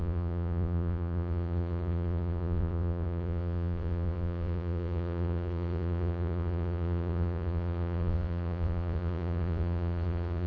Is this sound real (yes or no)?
no